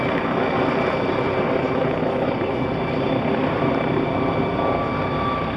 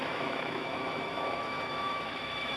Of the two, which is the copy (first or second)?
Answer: second